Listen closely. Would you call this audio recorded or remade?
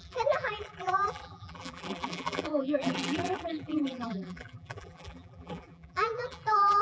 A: remade